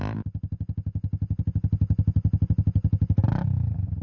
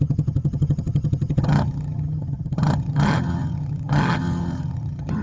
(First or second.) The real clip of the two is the first